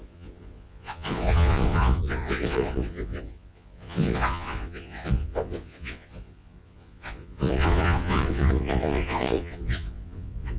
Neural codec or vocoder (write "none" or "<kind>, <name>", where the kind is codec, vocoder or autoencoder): vocoder, Vocos